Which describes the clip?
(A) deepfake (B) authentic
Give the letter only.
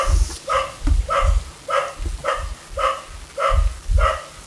B